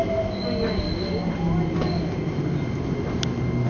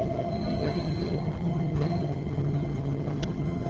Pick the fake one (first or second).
second